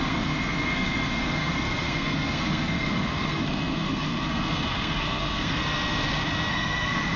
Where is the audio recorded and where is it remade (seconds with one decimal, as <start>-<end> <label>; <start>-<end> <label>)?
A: 0.0-5.6 remade; 5.6-6.5 recorded; 6.5-7.2 remade